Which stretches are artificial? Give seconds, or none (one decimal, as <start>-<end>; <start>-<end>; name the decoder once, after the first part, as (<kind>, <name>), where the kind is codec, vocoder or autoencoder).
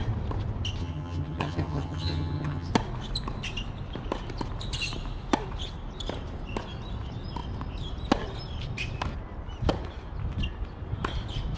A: 0.8-2.7 (vocoder, HiFi-GAN)